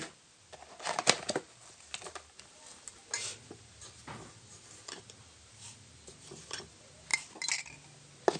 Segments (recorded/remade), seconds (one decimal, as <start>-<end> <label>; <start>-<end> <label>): 0.0-8.4 recorded